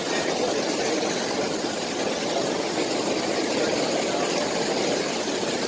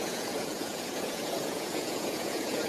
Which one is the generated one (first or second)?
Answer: second